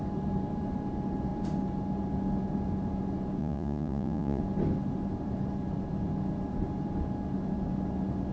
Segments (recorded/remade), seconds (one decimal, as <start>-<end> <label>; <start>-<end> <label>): 0.0-3.4 recorded; 3.4-4.4 remade; 4.4-8.3 recorded